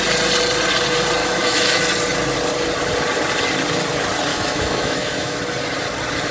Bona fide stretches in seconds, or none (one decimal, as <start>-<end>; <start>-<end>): 0.0-1.2; 1.8-4.3; 5.4-6.3